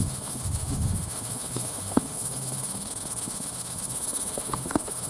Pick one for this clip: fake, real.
fake